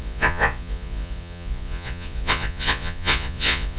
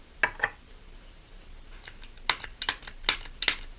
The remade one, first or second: first